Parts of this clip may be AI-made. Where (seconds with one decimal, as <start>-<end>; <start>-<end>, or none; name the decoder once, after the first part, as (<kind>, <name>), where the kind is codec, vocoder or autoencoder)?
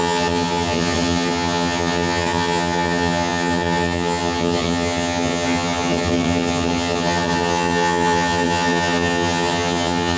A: 0.0-10.2 (vocoder, HiFi-GAN)